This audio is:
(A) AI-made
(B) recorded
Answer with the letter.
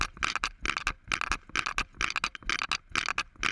B